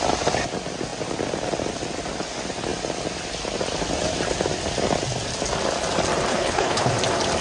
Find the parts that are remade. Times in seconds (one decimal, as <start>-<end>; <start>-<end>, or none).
6.3-6.9